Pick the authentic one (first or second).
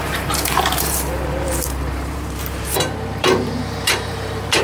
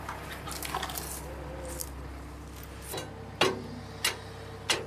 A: second